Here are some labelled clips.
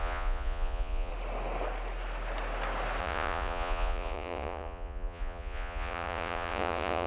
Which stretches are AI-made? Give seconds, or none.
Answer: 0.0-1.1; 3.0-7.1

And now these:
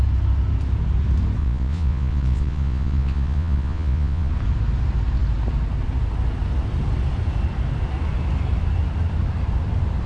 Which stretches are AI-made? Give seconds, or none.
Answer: 1.4-4.3

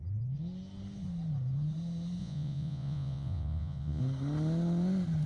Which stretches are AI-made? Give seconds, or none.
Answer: 2.2-4.0

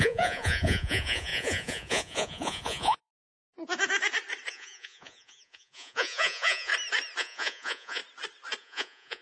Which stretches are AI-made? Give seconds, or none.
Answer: 0.0-3.1; 4.5-6.7; 7.2-8.0; 8.6-9.2

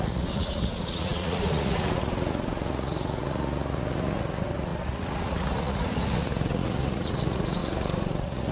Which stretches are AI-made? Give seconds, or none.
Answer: 0.0-8.5

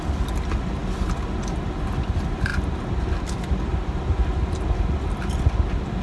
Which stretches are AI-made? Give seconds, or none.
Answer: none